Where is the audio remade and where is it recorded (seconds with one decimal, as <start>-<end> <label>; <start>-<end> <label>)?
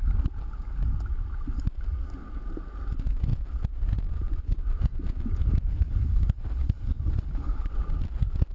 0.0-5.7 recorded; 5.7-7.7 remade; 7.7-8.5 recorded